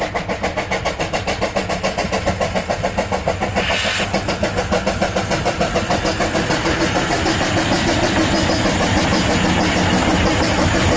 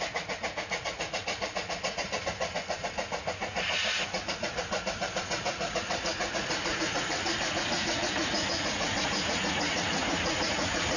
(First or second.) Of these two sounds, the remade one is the second